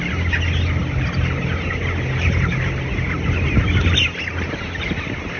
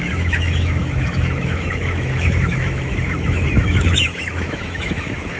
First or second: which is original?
first